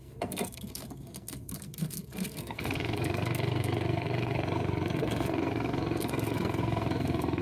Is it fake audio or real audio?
fake